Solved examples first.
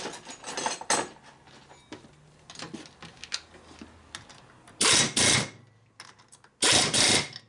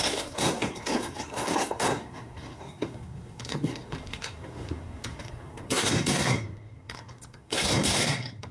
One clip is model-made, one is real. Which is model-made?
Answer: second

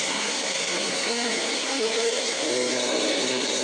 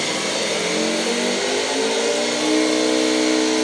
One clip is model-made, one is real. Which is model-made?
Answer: first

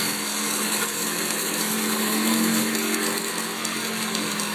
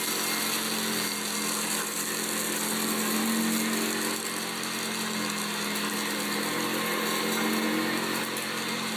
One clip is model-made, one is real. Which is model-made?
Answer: first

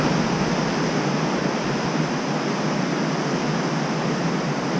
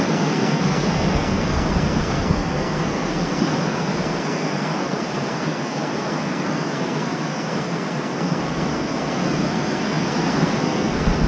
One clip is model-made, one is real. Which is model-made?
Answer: second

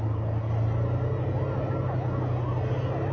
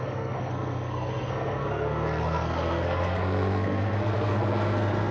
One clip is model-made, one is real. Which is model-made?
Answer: second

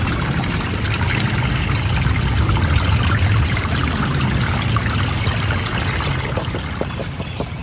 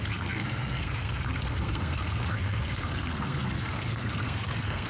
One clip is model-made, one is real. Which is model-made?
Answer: second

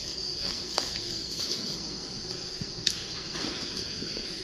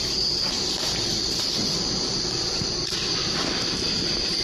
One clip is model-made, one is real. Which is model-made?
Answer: first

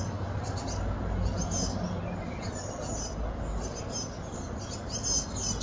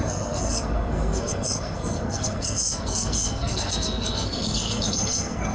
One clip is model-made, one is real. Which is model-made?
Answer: second